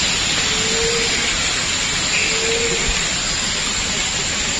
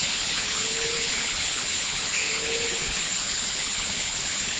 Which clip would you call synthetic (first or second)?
second